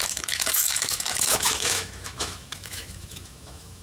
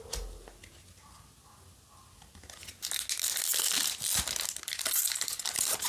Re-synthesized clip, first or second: first